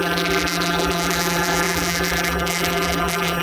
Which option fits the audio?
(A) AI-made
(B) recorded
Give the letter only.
A